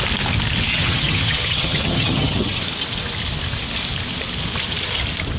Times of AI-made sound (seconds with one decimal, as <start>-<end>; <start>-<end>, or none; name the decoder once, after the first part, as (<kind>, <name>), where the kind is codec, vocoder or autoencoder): 0.7-2.6 (vocoder, HiFi-GAN)